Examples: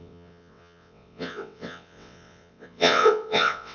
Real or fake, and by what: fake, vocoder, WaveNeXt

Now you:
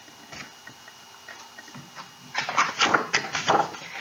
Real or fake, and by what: real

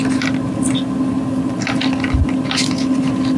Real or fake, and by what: real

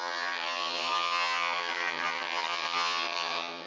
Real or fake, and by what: fake, vocoder, HiFi-GAN